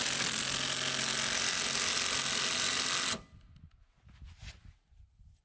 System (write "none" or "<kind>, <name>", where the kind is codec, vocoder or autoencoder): none